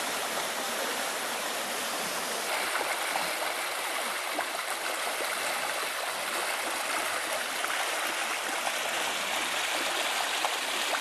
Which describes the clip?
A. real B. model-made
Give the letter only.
A